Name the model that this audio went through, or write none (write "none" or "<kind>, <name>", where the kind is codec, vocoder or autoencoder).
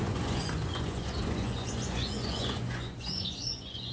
vocoder, Vocos